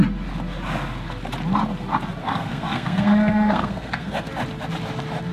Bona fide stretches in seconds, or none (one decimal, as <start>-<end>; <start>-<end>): 0.0-2.2; 4.3-5.3